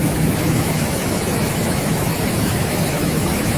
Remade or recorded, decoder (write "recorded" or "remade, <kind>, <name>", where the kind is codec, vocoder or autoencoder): remade, autoencoder, DAC-VAE